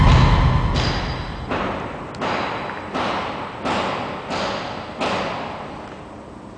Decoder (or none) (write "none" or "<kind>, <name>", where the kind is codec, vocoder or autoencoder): none